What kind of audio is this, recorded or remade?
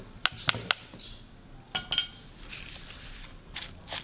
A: recorded